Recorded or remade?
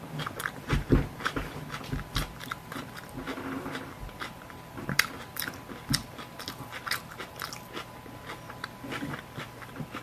recorded